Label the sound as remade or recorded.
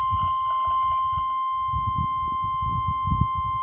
recorded